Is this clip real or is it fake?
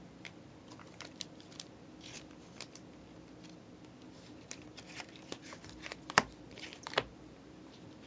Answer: fake